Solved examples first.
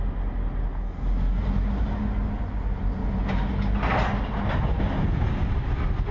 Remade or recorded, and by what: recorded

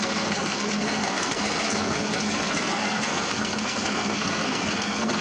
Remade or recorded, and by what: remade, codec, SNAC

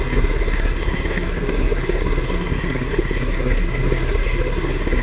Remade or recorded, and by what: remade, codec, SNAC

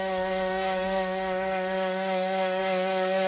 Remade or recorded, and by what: remade, codec, SNAC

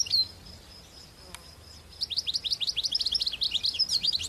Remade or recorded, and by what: recorded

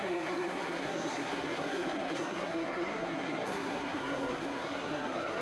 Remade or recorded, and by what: remade, codec, SNAC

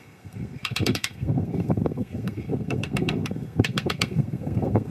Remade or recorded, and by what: remade, codec, SNAC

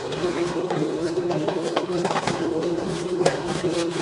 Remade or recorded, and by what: remade, codec, SNAC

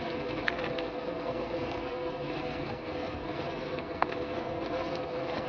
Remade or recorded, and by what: remade, codec, SNAC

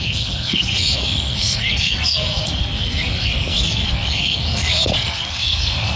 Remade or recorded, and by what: remade, codec, SNAC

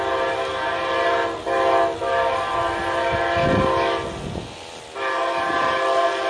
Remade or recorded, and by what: recorded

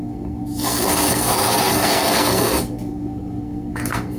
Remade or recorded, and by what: remade, codec, SNAC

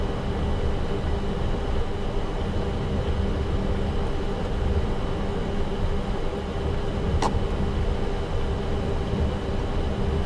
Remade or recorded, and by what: recorded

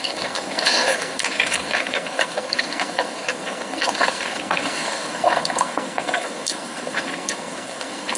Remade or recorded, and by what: remade, codec, SNAC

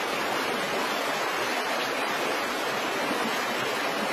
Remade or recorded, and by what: recorded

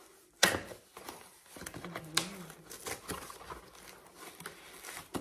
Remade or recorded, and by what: recorded